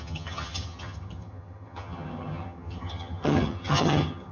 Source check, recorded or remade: remade